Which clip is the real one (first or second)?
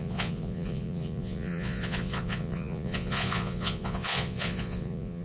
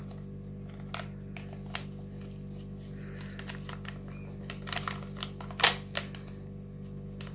second